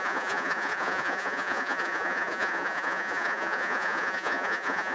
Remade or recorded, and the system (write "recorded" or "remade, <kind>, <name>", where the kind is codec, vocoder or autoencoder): remade, vocoder, Vocos